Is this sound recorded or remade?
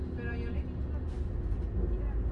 recorded